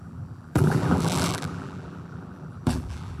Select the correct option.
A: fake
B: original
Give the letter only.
A